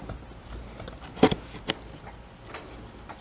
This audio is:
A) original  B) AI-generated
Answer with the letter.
A